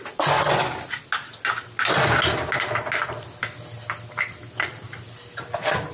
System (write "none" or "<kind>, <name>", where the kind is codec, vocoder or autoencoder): none